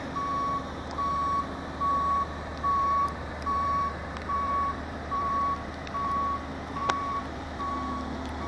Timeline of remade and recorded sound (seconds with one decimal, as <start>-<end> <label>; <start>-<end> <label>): 0.0-2.5 recorded; 2.5-6.1 remade; 6.1-6.8 recorded; 6.8-7.7 remade; 7.7-8.5 recorded